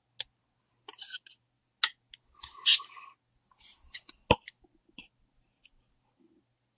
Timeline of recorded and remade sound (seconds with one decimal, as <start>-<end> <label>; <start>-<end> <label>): 0.0-6.8 recorded